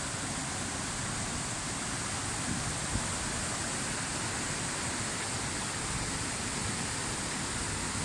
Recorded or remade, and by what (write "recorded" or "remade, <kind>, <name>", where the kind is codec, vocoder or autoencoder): recorded